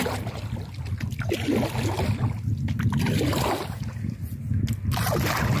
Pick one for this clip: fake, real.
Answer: real